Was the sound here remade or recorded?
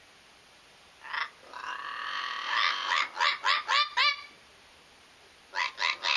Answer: recorded